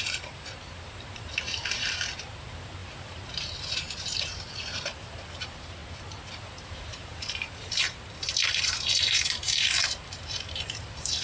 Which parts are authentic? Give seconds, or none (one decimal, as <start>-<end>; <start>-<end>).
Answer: 5.8-6.3